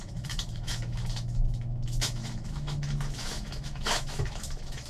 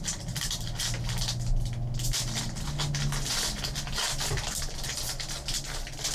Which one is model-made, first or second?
first